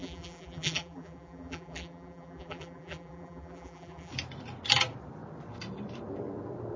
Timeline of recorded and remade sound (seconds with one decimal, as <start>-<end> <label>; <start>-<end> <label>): 0.0-4.1 remade; 4.1-6.8 recorded